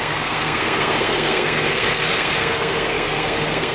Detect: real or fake fake